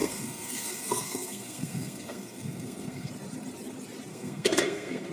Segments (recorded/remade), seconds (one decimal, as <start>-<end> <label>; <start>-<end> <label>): 0.0-3.1 remade; 3.1-4.1 recorded; 4.1-5.1 remade